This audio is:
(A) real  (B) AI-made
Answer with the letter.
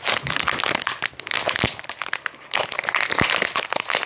A